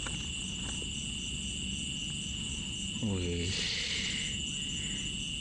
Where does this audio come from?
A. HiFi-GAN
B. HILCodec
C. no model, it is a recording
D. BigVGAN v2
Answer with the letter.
C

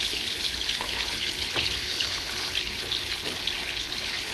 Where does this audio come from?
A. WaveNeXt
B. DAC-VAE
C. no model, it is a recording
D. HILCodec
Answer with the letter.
D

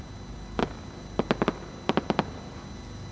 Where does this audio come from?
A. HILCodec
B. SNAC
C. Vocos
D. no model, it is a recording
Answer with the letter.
D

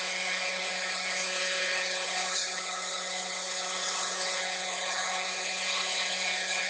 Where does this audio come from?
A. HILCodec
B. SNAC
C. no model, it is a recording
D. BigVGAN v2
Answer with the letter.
A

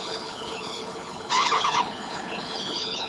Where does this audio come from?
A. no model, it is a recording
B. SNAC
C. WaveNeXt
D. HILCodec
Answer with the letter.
D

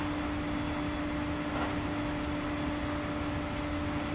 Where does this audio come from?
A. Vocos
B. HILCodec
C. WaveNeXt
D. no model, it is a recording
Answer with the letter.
D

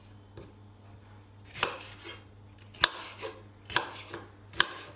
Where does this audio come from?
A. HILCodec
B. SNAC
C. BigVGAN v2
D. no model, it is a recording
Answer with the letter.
D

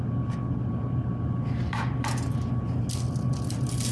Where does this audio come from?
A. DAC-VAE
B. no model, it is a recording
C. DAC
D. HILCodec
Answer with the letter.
B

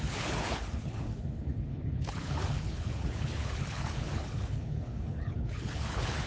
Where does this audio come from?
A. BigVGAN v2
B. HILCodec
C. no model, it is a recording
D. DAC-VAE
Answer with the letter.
B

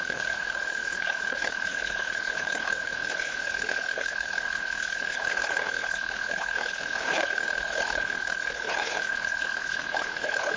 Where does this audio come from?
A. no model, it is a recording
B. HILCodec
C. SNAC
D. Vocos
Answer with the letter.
B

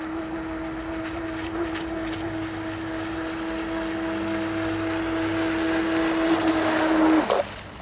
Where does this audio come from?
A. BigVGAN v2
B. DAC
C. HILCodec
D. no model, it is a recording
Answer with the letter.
D